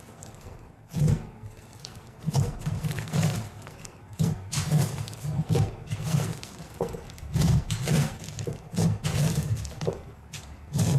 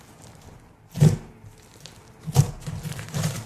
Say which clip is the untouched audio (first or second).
second